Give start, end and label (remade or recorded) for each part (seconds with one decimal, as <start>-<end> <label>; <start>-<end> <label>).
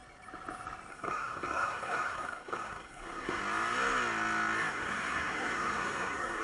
0.0-0.9 recorded; 0.9-3.4 remade; 3.4-4.7 recorded; 4.7-6.4 remade